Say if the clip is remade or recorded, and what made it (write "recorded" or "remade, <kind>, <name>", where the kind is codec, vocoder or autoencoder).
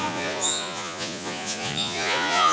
remade, vocoder, Vocos